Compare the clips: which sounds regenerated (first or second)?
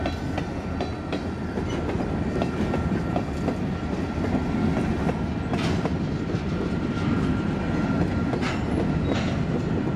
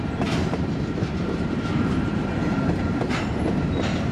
second